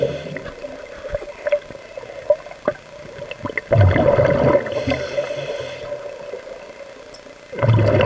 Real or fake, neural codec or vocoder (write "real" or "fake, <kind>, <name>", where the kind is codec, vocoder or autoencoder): real